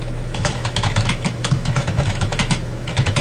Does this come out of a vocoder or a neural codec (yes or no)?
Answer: yes